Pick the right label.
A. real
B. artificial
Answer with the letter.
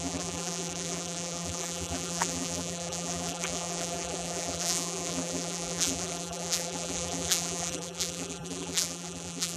B